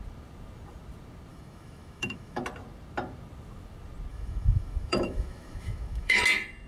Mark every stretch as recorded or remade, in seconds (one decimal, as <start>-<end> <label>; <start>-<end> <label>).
0.0-1.3 recorded; 1.3-2.4 remade; 2.4-4.1 recorded; 4.1-6.2 remade; 6.2-6.7 recorded